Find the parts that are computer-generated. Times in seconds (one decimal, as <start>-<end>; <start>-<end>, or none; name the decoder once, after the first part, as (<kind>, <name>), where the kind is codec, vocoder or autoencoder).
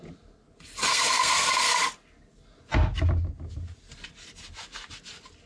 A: 0.9-1.8 (codec, SNAC)